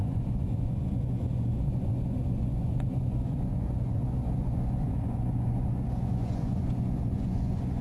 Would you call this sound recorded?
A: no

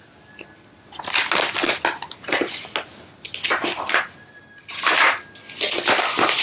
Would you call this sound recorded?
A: yes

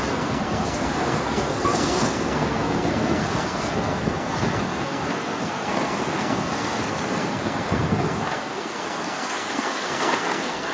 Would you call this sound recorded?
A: no